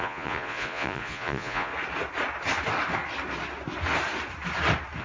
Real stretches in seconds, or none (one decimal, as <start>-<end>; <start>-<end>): 1.7-5.0